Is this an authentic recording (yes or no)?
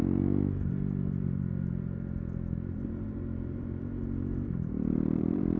no